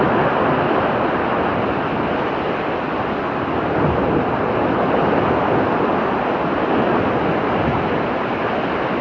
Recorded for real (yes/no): yes